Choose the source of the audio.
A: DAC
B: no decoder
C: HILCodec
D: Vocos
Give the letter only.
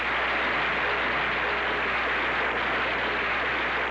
B